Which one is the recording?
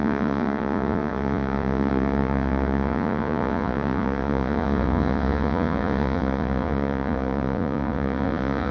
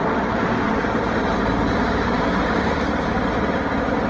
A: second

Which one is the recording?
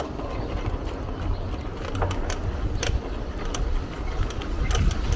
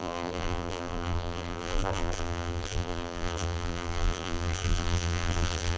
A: first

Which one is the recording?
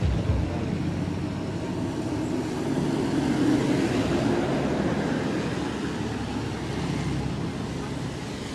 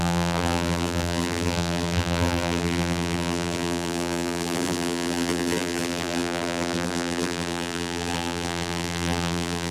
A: first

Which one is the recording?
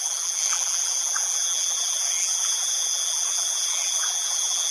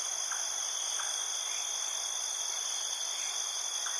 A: second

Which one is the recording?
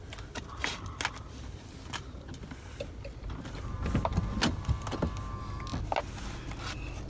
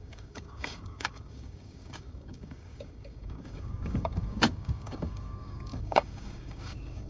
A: first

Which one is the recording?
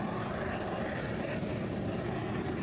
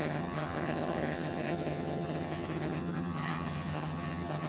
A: first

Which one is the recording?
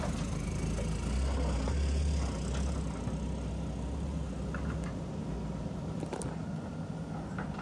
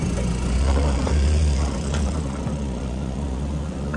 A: first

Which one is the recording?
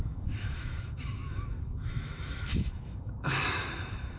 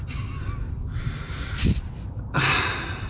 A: second